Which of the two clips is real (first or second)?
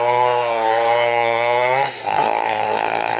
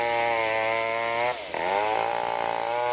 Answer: second